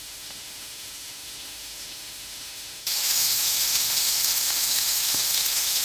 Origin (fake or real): fake